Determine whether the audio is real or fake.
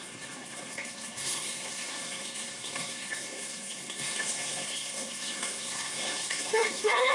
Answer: fake